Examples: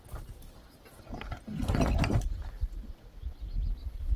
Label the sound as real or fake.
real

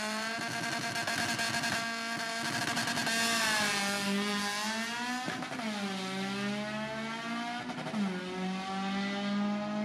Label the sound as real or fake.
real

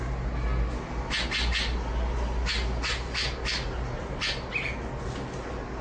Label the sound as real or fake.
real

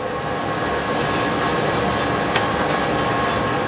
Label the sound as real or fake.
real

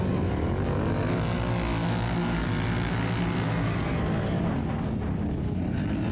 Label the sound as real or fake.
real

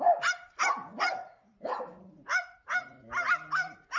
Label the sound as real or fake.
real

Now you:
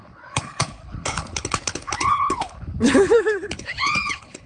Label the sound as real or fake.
fake